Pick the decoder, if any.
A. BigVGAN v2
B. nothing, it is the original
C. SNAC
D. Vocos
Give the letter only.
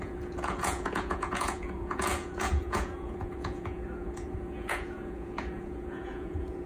D